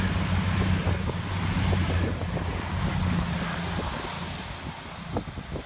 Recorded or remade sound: recorded